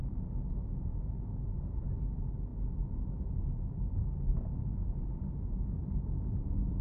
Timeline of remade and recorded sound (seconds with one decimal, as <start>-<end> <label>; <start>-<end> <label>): 0.0-6.8 recorded

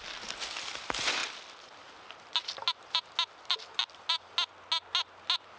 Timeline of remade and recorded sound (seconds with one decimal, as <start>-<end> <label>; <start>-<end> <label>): 0.0-5.6 recorded

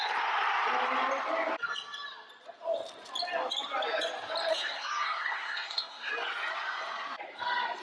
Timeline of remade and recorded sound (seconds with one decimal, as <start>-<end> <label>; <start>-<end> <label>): 0.0-4.5 recorded; 4.5-6.1 remade; 6.1-7.8 recorded

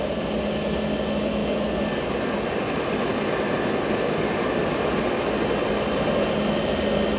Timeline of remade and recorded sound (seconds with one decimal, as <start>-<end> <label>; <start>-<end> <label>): 0.0-7.2 recorded